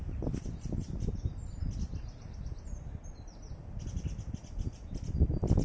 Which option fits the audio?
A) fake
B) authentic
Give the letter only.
B